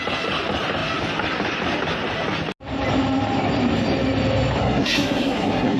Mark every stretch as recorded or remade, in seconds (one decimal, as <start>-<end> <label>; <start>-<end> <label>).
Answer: 0.0-4.6 recorded; 4.6-5.8 remade